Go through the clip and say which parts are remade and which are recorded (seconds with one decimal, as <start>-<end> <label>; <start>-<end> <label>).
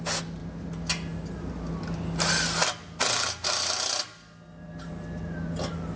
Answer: 0.0-6.0 recorded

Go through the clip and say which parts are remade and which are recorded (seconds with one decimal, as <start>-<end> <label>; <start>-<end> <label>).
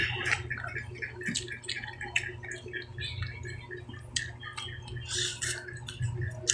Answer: 0.0-6.5 recorded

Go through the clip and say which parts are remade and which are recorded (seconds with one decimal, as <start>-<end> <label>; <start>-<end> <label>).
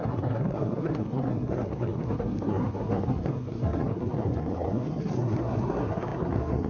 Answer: 0.0-6.7 remade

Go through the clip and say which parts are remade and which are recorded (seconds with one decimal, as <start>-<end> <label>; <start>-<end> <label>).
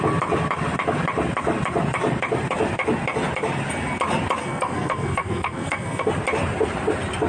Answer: 0.0-4.4 recorded; 4.4-6.1 remade; 6.1-7.3 recorded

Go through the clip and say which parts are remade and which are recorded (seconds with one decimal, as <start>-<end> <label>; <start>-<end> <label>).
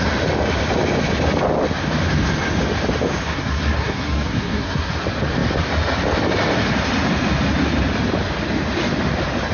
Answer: 0.0-3.3 recorded; 3.3-4.9 remade; 4.9-9.5 recorded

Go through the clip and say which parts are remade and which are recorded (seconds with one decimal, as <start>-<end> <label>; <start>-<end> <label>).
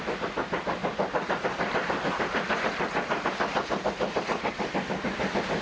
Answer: 0.0-5.6 recorded